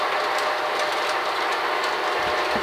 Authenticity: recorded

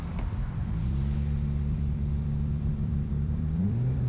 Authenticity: remade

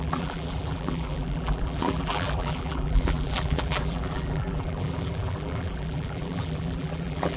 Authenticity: remade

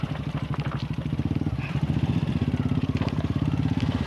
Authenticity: remade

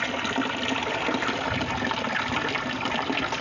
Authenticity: recorded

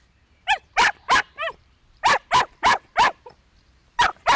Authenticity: remade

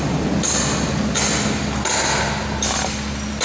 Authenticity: recorded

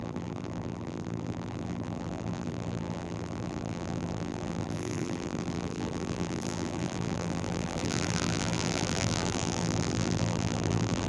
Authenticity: remade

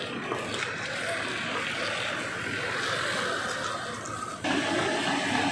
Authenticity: recorded